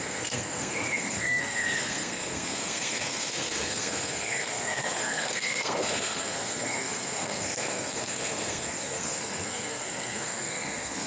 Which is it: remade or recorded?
remade